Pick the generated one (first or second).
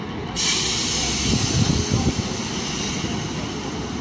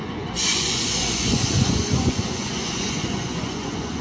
second